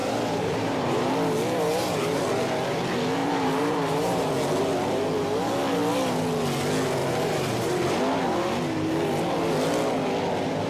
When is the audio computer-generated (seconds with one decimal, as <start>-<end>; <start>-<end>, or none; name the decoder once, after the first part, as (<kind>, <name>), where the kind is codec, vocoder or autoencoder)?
0.0-1.1 (vocoder, BigVGAN v2); 1.7-2.2; 3.2-4.3; 7.0-7.7